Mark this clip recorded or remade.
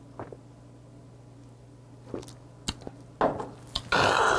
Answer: recorded